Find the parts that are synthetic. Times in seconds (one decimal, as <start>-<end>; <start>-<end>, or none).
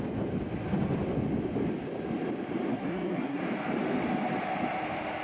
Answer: 2.7-3.4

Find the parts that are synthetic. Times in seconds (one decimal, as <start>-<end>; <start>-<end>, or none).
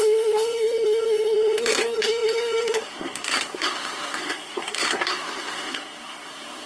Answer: 0.0-6.7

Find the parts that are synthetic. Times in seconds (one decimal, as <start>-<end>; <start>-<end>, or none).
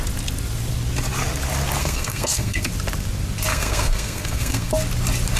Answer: 1.8-2.7; 3.5-4.7